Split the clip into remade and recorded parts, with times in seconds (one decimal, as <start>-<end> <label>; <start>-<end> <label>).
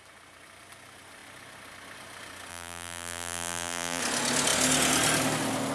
0.0-2.5 recorded; 2.5-4.0 remade; 4.0-5.7 recorded